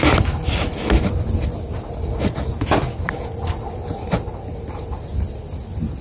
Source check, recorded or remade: recorded